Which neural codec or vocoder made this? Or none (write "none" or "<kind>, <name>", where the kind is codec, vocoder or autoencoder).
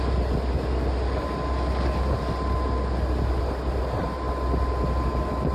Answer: none